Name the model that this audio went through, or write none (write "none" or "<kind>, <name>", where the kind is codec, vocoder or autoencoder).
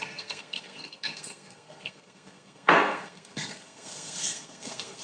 codec, SNAC